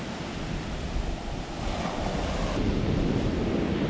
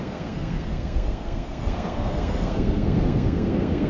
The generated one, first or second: second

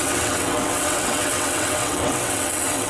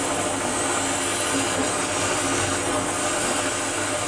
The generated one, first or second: first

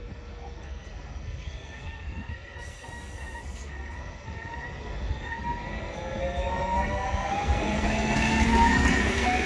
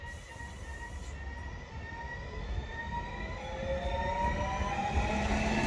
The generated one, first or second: first